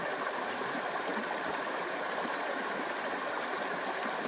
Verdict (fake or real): fake